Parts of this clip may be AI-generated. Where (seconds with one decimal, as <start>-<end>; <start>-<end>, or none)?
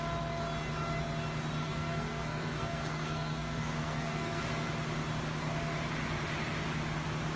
1.6-4.4